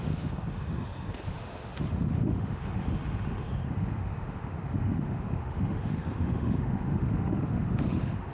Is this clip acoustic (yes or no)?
no